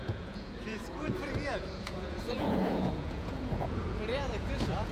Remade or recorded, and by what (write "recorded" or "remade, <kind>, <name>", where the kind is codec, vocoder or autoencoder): remade, vocoder, Vocos